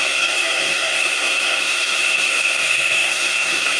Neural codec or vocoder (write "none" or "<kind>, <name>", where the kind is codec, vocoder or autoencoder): codec, SNAC